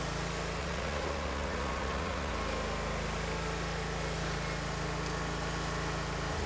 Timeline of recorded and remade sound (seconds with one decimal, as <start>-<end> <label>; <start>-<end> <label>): 0.0-0.6 recorded; 0.6-2.3 remade; 2.3-6.5 recorded

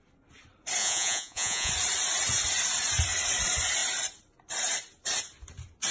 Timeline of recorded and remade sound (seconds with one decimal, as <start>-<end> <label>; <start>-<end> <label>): 0.0-0.8 recorded; 0.8-1.7 remade; 1.7-5.9 recorded

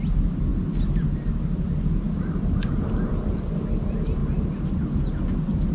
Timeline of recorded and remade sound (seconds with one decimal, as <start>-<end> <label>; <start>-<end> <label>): 0.0-5.7 recorded

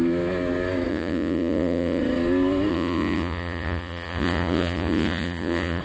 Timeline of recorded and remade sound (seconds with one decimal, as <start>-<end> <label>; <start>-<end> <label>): 0.0-0.9 recorded; 0.9-2.0 remade; 2.0-2.7 recorded; 2.7-5.8 remade